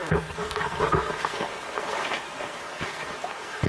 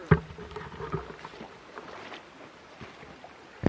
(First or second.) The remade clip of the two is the first